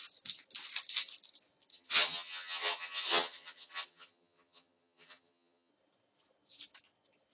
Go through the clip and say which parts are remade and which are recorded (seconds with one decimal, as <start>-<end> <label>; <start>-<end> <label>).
0.0-1.7 recorded; 1.7-5.7 remade; 5.7-7.3 recorded